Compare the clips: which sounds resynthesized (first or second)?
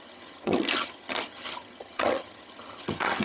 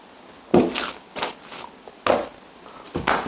first